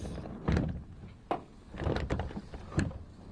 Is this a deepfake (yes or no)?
no